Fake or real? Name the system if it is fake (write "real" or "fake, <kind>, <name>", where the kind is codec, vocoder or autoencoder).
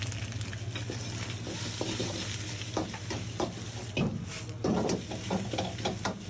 real